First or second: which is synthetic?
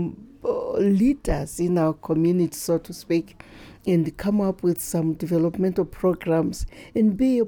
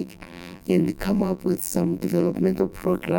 second